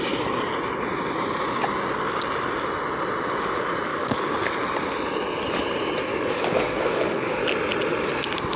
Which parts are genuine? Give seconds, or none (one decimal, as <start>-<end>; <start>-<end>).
0.0-3.9; 4.5-6.1; 7.4-8.6